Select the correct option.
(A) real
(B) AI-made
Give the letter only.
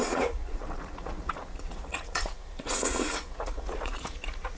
B